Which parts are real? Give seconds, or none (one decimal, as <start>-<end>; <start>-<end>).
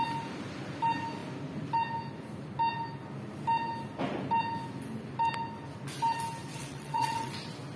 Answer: 0.0-6.5; 7.3-7.8